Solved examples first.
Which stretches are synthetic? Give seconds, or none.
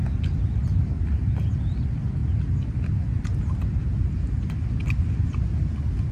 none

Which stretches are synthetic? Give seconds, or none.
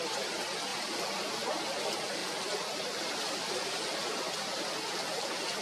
none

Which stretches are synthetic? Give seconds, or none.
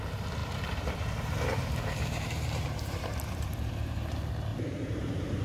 0.4-3.6 (vocoder, BigVGAN v2); 4.5-5.4